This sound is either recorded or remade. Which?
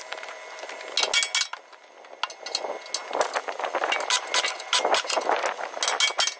recorded